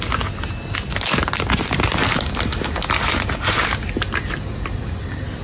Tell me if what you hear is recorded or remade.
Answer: recorded